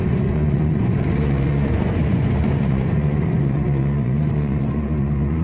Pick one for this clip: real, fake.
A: fake